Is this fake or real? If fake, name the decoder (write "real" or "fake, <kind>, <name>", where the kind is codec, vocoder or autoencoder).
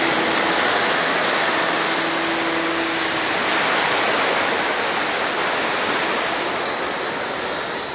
real